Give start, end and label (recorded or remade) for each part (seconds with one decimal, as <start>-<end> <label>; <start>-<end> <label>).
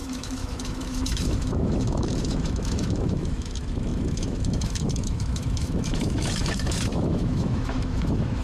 0.0-8.4 remade